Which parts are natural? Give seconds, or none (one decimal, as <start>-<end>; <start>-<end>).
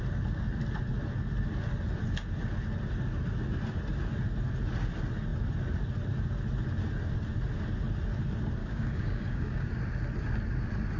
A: 0.0-8.6; 9.7-11.0